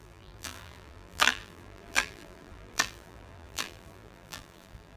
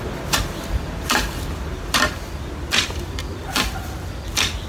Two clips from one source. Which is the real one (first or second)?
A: second